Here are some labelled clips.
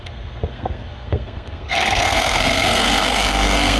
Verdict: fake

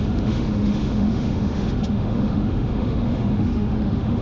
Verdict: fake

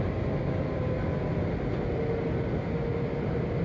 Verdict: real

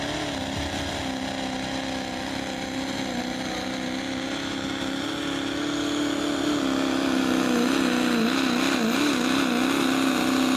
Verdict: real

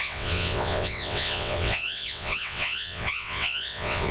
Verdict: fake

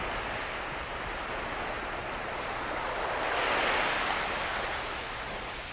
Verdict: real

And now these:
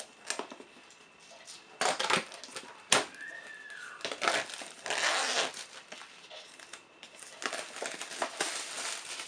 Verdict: real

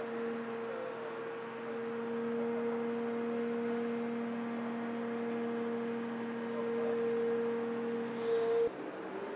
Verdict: real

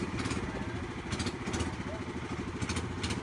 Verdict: real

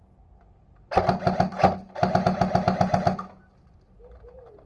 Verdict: real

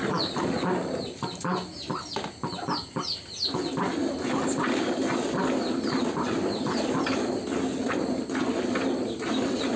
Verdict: real